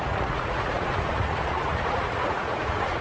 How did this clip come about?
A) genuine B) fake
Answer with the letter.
B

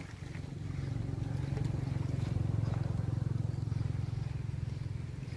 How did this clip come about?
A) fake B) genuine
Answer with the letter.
B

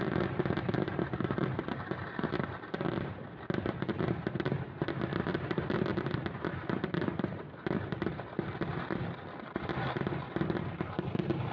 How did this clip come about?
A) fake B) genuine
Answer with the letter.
A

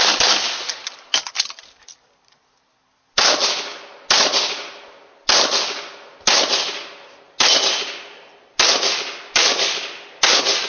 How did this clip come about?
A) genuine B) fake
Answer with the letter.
A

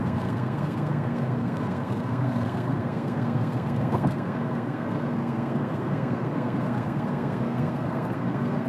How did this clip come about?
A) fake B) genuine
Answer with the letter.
A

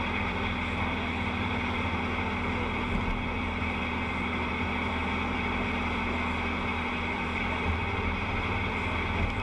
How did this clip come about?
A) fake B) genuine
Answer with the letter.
B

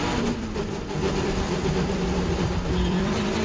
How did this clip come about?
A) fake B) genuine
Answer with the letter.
A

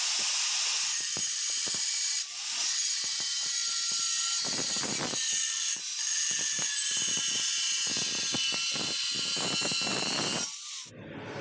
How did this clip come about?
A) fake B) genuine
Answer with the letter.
B